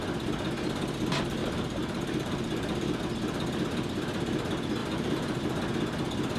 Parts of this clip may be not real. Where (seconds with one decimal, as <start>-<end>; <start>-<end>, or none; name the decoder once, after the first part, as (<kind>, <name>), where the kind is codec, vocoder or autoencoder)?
1.4-3.0 (vocoder, BigVGAN v2); 4.8-5.4